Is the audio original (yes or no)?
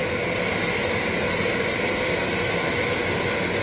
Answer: yes